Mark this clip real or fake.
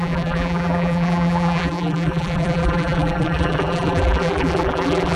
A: fake